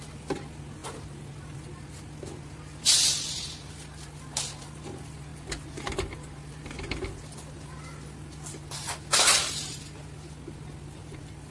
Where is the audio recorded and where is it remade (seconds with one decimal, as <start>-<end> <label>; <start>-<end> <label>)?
0.0-11.5 recorded

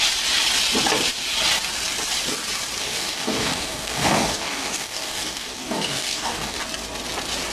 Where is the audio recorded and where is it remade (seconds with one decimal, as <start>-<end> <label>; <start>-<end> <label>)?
0.0-2.8 recorded; 2.8-6.6 remade; 6.6-7.5 recorded

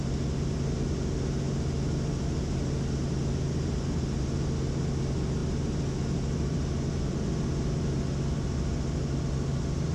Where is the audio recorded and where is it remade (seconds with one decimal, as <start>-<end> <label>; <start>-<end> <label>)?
0.0-9.9 recorded

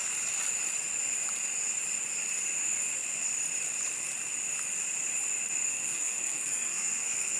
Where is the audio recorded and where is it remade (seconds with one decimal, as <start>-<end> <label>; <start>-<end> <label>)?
0.0-5.7 recorded; 5.7-7.4 remade

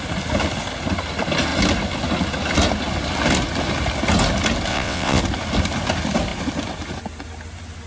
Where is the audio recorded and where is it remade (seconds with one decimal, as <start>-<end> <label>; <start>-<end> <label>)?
0.0-4.7 recorded; 4.7-5.2 remade; 5.2-7.9 recorded

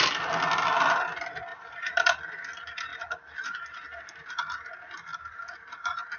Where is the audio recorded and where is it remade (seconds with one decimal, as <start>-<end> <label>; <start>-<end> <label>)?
0.0-1.5 recorded; 1.5-2.2 remade; 2.2-2.9 recorded; 2.9-4.3 remade; 4.3-5.1 recorded; 5.1-6.2 remade

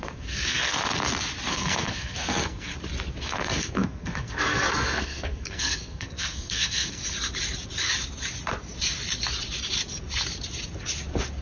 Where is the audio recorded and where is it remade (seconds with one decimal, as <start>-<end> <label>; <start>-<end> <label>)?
0.0-0.8 remade; 0.8-1.5 recorded; 1.5-2.7 remade; 2.7-3.2 recorded; 3.2-7.0 remade; 7.0-11.4 recorded

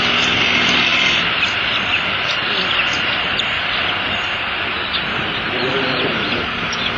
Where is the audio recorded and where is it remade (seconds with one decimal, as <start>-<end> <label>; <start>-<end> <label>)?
0.0-0.9 recorded; 0.9-4.7 remade; 4.7-7.0 recorded